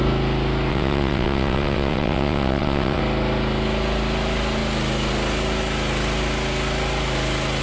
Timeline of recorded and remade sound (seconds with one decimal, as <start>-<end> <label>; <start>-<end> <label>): 0.0-0.7 recorded; 0.7-3.0 remade; 3.0-7.6 recorded